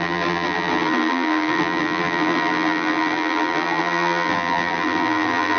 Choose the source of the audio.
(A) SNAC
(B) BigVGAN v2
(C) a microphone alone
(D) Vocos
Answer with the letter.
B